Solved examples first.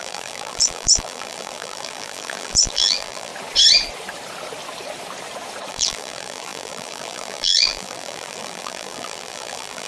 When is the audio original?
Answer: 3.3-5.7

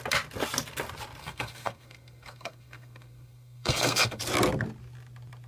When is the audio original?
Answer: 0.0-1.2; 4.2-5.5

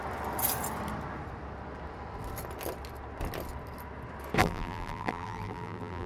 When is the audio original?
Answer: 0.0-4.4

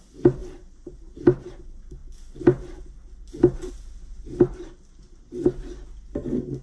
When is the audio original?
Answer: 0.0-6.6

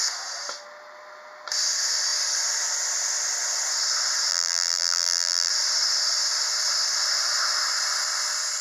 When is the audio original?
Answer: 0.0-4.3; 5.5-8.6

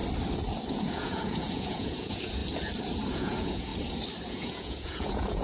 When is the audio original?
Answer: 0.0-0.7; 2.4-3.1; 3.7-4.2

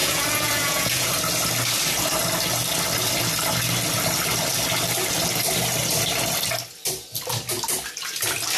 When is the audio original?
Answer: 1.1-8.6